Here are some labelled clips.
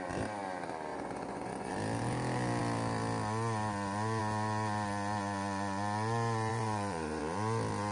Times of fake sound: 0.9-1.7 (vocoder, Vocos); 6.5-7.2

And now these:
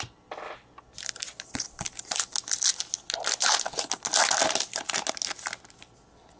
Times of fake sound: none

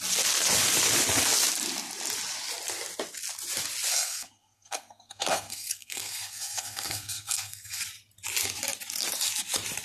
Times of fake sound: 3.9-7.8 (codec, SNAC)